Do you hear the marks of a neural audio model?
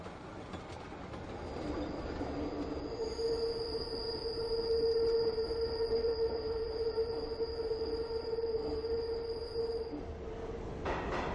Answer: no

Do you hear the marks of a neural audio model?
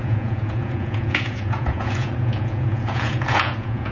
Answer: yes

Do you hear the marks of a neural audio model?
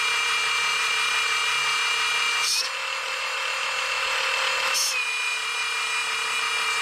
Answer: no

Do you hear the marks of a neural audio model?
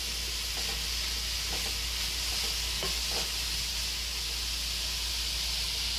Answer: no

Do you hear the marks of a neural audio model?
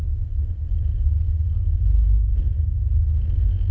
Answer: no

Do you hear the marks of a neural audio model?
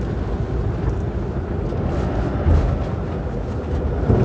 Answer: no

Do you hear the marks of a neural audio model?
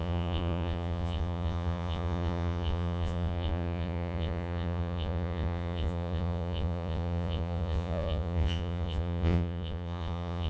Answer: yes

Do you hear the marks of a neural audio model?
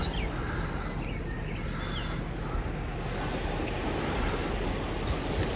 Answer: no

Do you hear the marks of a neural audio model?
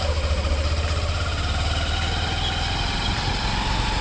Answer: no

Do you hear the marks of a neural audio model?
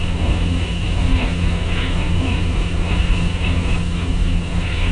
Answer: yes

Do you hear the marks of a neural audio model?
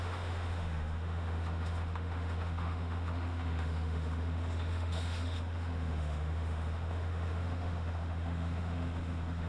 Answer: yes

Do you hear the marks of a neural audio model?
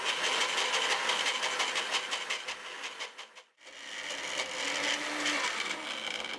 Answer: no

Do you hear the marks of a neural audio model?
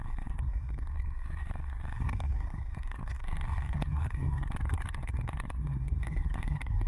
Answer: yes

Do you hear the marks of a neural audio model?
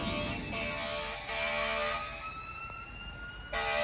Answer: no